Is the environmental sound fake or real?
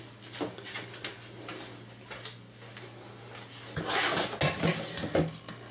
real